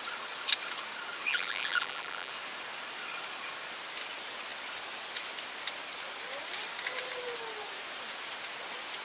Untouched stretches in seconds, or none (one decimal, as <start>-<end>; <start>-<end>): 0.0-1.3; 2.3-9.0